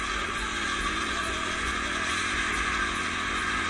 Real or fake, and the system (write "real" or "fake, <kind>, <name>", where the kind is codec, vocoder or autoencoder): fake, vocoder, Vocos